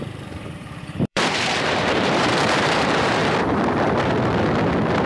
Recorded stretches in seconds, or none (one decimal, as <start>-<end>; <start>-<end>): 3.2-5.1